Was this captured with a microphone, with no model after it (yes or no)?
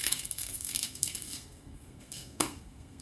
no